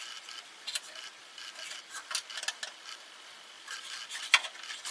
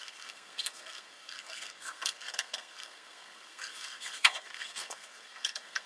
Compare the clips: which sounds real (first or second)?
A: first